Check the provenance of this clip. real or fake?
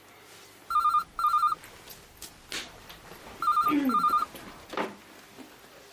real